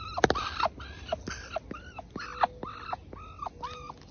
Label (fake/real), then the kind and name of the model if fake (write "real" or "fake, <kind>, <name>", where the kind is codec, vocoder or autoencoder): real